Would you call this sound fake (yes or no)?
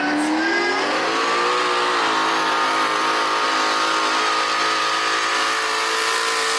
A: no